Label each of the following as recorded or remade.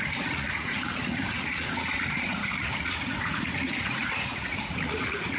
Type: remade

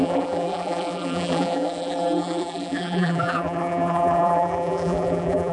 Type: remade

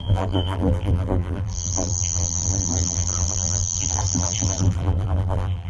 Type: remade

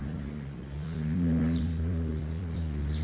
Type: remade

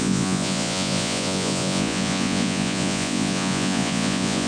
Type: remade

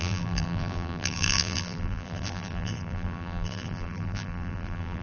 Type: remade